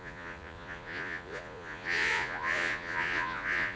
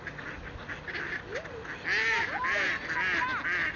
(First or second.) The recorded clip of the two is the second